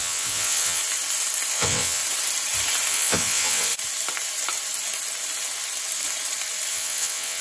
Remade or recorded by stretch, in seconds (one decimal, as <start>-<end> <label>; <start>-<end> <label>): 0.0-0.8 remade; 0.8-1.5 recorded; 1.5-2.0 remade; 2.0-2.9 recorded; 2.9-3.7 remade; 3.7-6.7 recorded; 6.7-7.4 remade